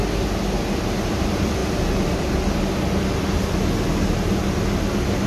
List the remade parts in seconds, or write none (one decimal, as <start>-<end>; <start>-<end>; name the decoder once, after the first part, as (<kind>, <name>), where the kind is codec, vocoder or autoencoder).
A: none